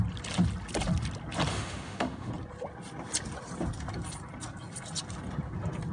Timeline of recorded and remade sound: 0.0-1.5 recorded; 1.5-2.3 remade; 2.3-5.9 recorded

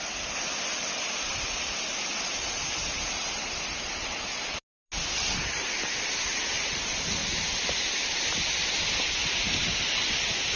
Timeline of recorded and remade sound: 0.0-10.6 recorded

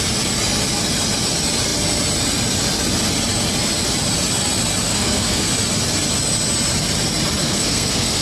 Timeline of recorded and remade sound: 0.0-4.9 recorded; 4.9-5.5 remade; 5.5-7.4 recorded; 7.4-8.2 remade

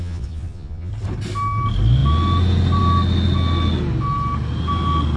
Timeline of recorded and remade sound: 0.0-0.9 remade; 0.9-5.2 recorded

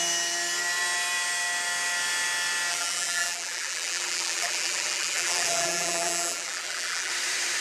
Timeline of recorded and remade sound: 0.0-2.7 recorded; 2.7-7.1 remade; 7.1-7.6 recorded